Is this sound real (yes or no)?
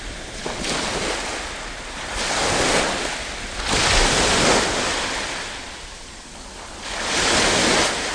yes